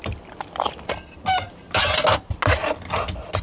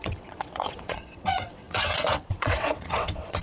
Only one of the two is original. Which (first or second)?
first